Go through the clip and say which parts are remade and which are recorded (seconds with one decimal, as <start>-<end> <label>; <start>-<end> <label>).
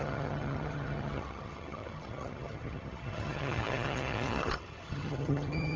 0.0-5.8 remade